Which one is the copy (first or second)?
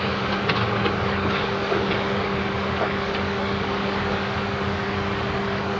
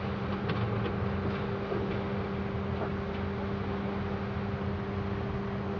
first